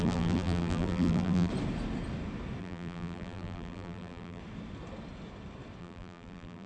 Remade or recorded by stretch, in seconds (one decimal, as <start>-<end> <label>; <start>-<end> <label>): 0.0-1.5 remade; 1.5-2.6 recorded; 2.6-4.4 remade; 4.4-5.8 recorded; 5.8-6.7 remade